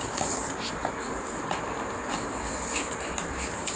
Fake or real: real